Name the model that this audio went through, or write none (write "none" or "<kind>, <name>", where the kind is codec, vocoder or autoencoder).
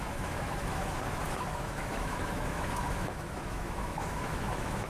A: autoencoder, DAC-VAE